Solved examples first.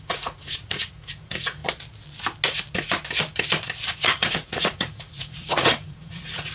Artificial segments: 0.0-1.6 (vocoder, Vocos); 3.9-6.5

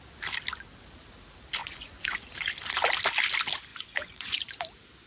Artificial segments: 1.6-2.2 (vocoder, Vocos); 3.7-4.4

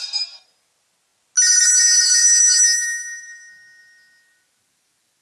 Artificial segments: none

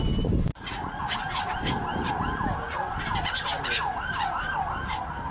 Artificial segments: 0.5-1.0 (vocoder, Vocos)

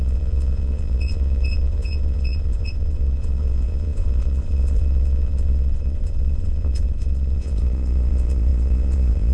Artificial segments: 0.0-9.3 (vocoder, Vocos)

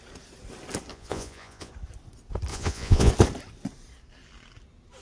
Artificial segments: 0.9-1.7 (vocoder, Vocos); 2.5-3.1

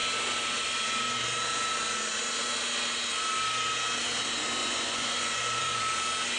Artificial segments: 4.6-5.8 (vocoder, Vocos)